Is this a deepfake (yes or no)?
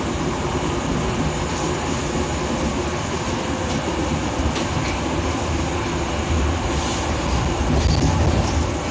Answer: no